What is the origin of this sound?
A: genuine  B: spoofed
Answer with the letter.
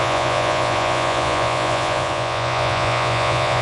B